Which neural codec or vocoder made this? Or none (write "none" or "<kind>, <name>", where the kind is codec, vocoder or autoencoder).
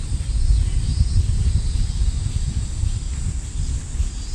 none